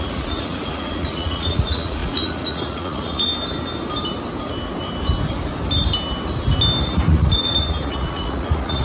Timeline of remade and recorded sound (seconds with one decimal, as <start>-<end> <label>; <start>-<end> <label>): 0.0-3.3 remade; 3.3-6.8 recorded; 6.8-8.8 remade